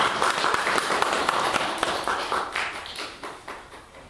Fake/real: fake